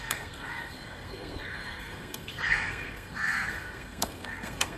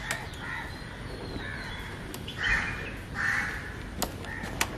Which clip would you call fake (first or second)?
first